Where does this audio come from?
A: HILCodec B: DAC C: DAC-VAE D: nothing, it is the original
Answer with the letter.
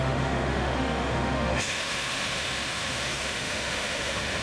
C